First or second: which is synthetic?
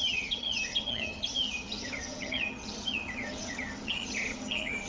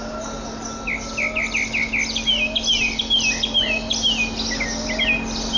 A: first